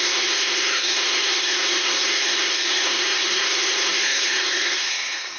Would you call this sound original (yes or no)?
no